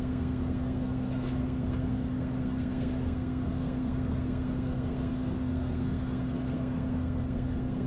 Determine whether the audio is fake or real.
fake